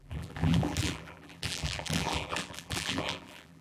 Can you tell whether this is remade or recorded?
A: remade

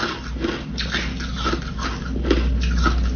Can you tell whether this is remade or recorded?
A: recorded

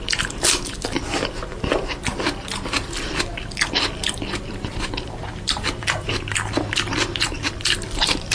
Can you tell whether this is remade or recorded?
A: remade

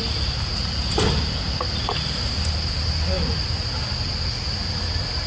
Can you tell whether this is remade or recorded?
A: recorded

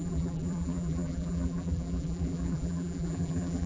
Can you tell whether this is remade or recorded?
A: remade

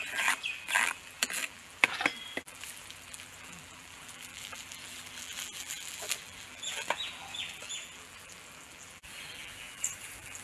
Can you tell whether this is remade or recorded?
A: remade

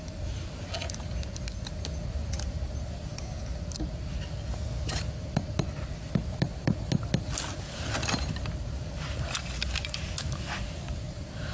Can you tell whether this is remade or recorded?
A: recorded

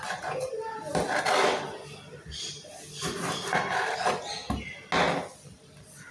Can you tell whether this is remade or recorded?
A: recorded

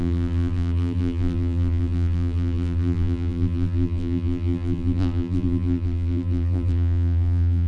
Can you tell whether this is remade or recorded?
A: remade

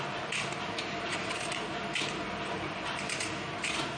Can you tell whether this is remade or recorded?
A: remade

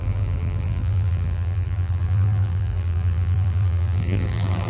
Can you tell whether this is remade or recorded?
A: remade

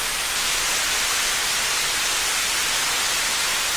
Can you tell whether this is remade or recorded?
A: remade